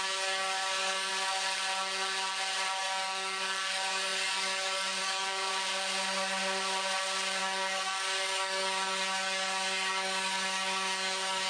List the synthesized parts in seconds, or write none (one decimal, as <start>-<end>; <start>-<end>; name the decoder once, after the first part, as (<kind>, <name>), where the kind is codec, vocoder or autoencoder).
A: 0.0-1.1 (codec, DAC); 2.8-5.5; 7.4-11.5